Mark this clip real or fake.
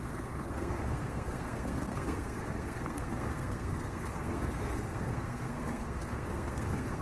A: fake